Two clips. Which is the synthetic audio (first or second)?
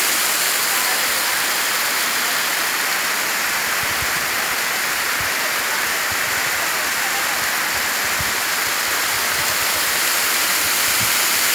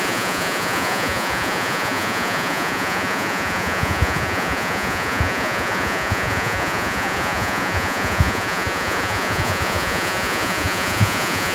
second